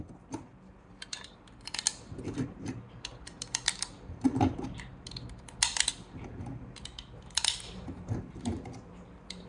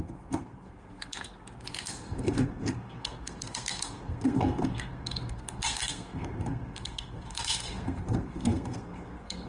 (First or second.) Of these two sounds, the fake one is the second